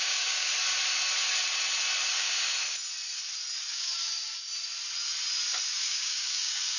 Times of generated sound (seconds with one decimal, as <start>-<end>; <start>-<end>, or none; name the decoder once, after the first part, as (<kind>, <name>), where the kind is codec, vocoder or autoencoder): 0.0-0.5 (codec, DAC); 2.1-2.5; 3.7-4.5; 5.8-6.8